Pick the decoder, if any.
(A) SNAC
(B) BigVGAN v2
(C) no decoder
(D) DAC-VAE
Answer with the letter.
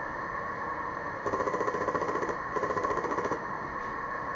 D